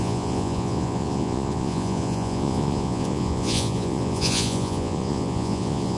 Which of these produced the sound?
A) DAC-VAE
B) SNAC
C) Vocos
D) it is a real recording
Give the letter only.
C